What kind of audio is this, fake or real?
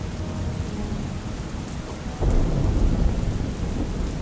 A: real